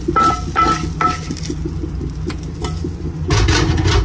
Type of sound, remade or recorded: recorded